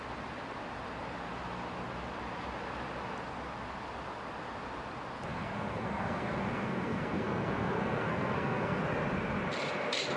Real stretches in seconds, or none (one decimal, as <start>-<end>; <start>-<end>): 0.0-5.3; 8.8-10.2